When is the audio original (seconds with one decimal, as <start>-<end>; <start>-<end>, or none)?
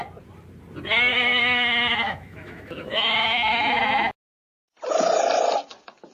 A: 0.0-1.1; 3.8-6.1